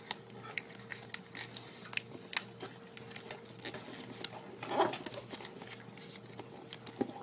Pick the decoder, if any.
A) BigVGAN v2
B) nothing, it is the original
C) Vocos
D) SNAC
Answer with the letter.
B